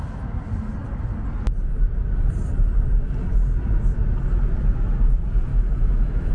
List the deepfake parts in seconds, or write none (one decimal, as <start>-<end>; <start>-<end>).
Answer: 5.5-6.3